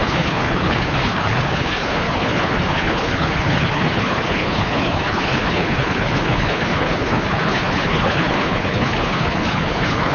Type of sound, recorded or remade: remade